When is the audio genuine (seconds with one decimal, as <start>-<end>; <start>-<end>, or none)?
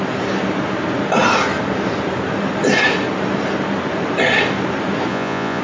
0.0-5.1